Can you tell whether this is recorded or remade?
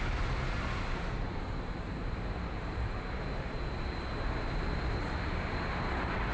remade